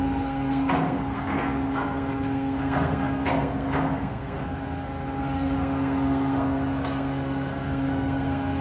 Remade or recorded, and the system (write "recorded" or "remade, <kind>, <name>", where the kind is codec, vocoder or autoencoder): remade, codec, SNAC